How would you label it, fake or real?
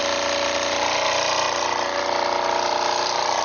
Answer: real